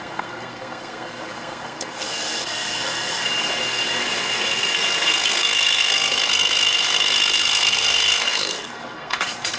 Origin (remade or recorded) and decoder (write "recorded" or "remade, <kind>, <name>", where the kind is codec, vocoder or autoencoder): remade, codec, SNAC